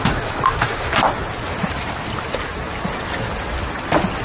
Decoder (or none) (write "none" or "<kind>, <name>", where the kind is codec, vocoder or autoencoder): none